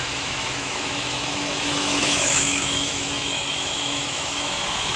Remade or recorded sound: remade